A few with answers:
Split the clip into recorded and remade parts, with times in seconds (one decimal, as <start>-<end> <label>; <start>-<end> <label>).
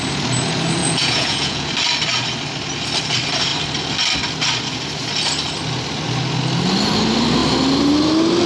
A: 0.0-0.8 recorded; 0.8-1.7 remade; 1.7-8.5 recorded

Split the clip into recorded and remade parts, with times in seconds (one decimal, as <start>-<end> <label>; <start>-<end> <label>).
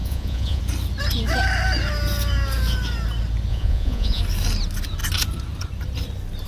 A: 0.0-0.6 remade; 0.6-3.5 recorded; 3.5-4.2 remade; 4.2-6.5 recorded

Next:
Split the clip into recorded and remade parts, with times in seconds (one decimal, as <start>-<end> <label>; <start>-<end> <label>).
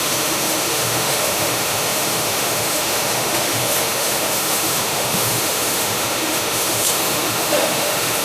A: 0.0-8.2 remade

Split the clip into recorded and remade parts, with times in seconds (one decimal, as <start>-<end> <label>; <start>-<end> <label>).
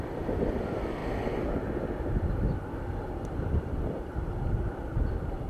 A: 0.0-5.5 recorded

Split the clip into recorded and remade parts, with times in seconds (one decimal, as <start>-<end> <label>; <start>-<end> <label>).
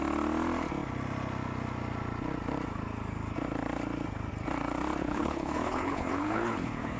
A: 0.0-5.0 recorded; 5.0-7.0 remade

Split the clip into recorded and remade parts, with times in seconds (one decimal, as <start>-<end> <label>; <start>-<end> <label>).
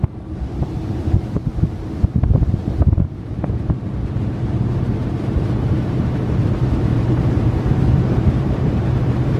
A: 0.0-1.5 remade; 1.5-2.8 recorded; 2.8-9.4 remade